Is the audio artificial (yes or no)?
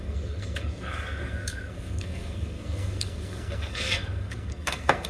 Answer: yes